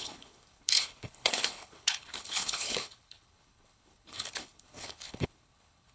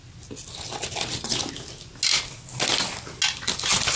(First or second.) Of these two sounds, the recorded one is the second